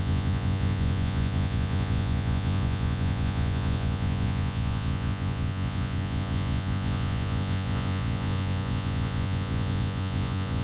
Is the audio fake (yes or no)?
yes